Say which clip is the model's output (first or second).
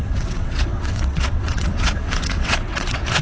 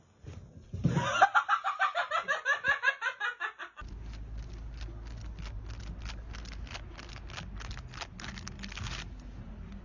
first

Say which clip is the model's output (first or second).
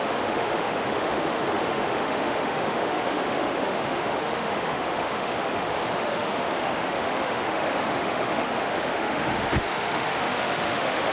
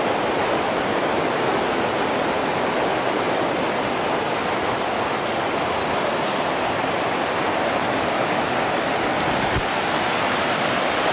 first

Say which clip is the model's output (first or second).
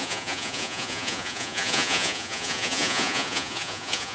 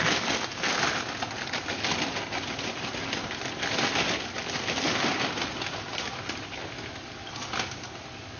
first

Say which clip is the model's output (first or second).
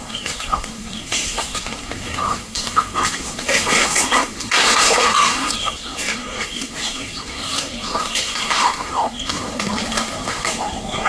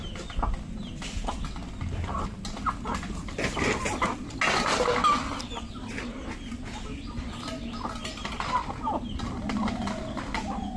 first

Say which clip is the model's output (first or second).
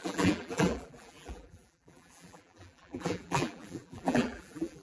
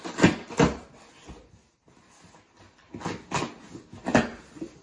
first